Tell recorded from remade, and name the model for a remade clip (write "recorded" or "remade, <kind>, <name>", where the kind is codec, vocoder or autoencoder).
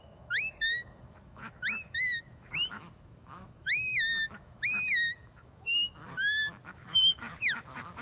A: remade, autoencoder, DAC-VAE